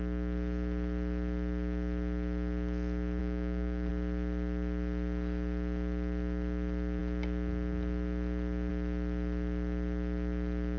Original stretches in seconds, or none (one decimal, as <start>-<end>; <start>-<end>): 0.0-3.2; 3.9-10.8